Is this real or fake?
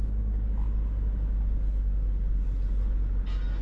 real